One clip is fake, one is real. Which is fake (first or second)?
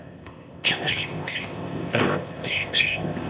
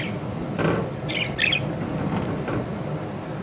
first